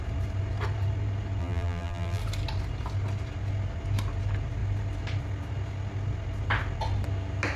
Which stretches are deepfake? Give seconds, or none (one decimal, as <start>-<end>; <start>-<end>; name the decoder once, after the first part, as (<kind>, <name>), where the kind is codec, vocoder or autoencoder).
1.4-2.2 (vocoder, BigVGAN v2)